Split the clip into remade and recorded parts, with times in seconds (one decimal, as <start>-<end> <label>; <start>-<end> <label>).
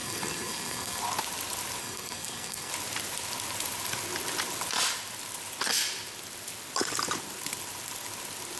0.0-1.0 remade; 1.0-1.8 recorded; 1.8-2.7 remade; 2.7-8.6 recorded